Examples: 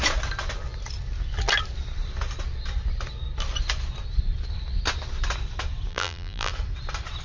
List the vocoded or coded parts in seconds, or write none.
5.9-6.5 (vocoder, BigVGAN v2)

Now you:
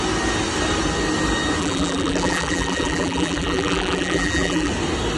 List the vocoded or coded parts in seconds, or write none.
1.6-4.7 (vocoder, BigVGAN v2)

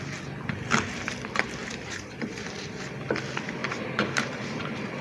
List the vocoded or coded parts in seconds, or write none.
1.6-3.1 (vocoder, BigVGAN v2); 3.6-5.0

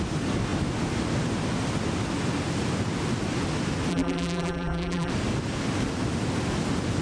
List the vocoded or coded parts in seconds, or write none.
3.9-5.1 (vocoder, BigVGAN v2)

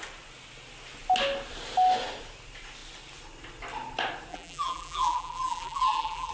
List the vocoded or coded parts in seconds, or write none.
4.3-6.3 (vocoder, BigVGAN v2)

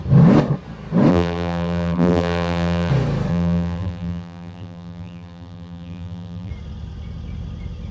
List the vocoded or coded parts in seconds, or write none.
1.1-2.9 (vocoder, BigVGAN v2); 3.3-6.5

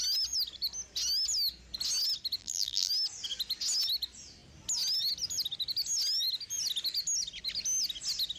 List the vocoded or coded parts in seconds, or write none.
2.4-2.9 (vocoder, BigVGAN v2)